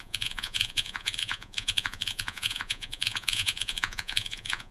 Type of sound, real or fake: fake